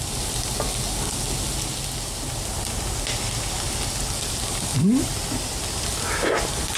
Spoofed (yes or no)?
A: no